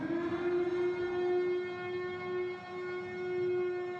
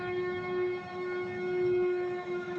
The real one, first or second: first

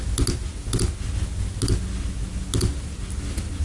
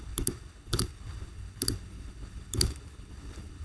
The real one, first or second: first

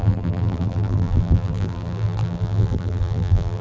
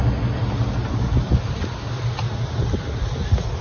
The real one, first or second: second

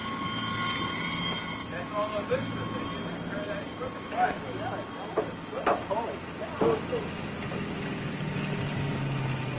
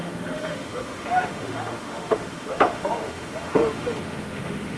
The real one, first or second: first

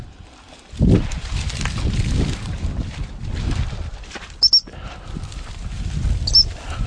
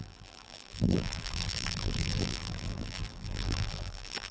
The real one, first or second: first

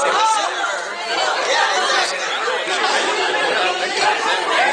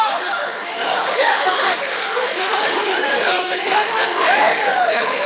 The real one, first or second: first